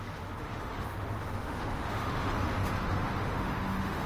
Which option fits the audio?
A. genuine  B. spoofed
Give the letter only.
B